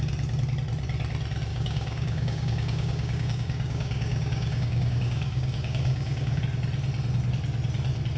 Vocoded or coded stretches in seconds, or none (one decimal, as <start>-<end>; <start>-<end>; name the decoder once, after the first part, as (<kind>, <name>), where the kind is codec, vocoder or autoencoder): 1.5-6.4 (codec, DAC)